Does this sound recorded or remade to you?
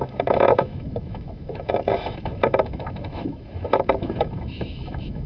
remade